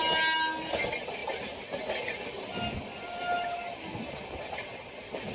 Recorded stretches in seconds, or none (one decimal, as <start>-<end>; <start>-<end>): 0.0-5.3

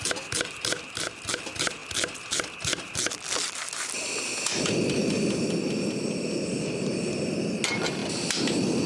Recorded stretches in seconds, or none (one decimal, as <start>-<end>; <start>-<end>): 0.0-8.9

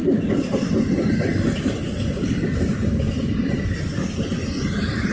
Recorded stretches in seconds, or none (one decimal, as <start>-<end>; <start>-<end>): 0.0-5.1